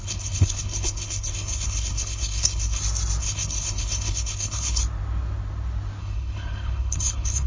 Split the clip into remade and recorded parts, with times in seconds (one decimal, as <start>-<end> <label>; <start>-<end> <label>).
0.0-2.8 remade; 2.8-3.2 recorded; 3.2-4.8 remade; 4.8-6.0 recorded; 6.0-7.5 remade